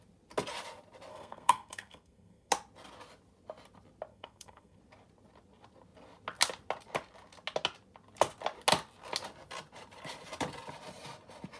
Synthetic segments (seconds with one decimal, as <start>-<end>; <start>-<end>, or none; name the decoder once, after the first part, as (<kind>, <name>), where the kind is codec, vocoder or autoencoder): 1.1-2.5 (codec, SNAC); 4.1-4.8

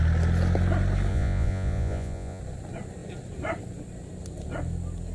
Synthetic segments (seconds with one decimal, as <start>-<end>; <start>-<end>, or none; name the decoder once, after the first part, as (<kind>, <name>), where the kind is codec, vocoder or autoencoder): 1.1-2.4 (vocoder, Vocos)

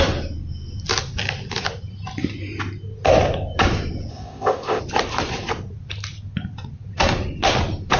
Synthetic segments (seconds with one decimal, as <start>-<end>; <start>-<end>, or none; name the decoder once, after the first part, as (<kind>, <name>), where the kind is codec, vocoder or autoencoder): 4.1-4.8 (codec, ZipCodec)

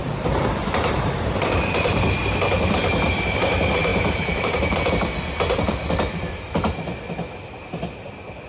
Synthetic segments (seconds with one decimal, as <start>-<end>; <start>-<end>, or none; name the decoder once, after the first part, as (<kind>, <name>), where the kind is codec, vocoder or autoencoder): 0.0-2.1 (vocoder, BigVGAN v2); 3.9-4.9

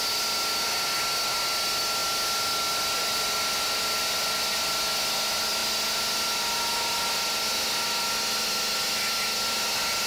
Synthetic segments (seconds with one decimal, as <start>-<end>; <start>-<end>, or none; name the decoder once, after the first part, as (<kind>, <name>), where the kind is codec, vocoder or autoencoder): none

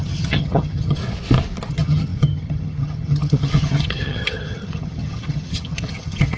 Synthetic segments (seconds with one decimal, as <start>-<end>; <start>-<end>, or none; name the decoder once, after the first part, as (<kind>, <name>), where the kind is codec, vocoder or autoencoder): 0.0-1.0 (vocoder, HiFi-GAN); 1.7-6.4